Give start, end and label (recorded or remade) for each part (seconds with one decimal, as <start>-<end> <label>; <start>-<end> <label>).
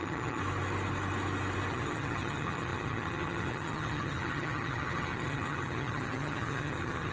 0.0-0.4 remade; 0.4-1.7 recorded; 1.7-7.1 remade